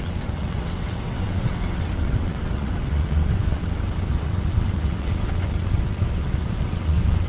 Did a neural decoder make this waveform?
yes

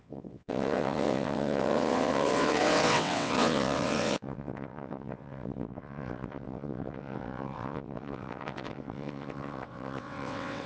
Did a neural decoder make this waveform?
yes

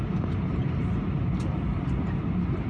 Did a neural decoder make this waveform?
no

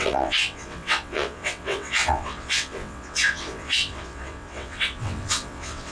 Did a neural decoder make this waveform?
yes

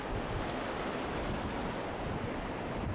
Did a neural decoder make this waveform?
no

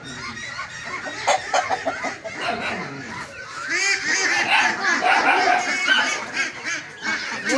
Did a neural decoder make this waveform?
no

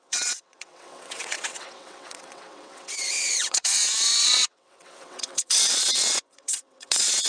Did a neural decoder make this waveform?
yes